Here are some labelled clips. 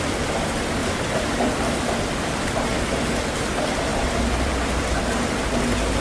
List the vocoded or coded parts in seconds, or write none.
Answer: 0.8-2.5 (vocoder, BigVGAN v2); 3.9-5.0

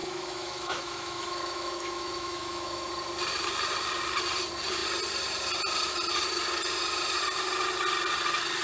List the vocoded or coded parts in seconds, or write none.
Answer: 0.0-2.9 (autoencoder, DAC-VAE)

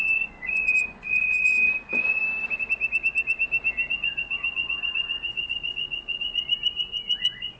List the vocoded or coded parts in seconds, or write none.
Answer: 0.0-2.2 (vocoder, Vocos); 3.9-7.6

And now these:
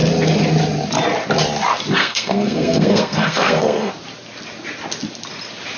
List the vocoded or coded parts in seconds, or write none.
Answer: 2.0-3.9 (codec, SNAC)

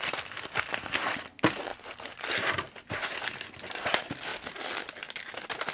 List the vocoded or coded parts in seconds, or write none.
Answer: none

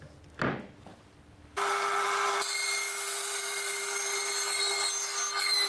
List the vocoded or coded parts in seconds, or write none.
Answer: 0.9-4.3 (vocoder, BigVGAN v2)

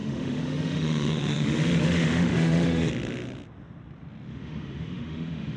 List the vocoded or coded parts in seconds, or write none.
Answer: 0.0-2.9 (autoencoder, DAC-VAE); 4.3-5.6